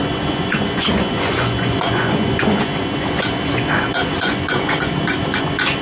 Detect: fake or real fake